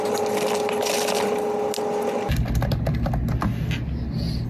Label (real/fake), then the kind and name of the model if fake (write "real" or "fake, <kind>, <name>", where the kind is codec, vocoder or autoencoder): real